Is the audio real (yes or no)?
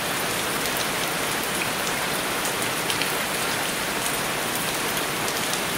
no